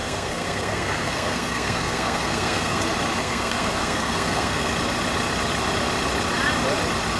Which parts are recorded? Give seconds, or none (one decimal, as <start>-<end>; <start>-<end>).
2.8-3.2; 4.7-7.2